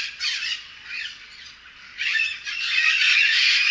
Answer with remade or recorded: remade